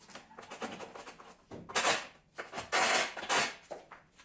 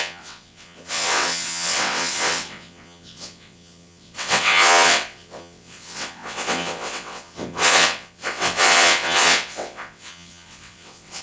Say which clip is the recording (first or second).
first